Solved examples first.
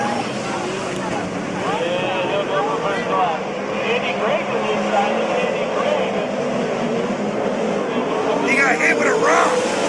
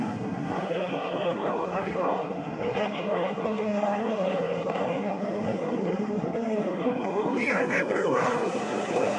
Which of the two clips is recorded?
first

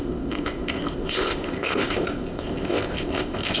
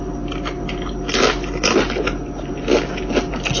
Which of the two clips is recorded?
second